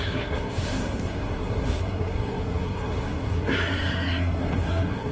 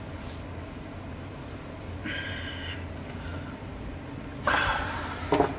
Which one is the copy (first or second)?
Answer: first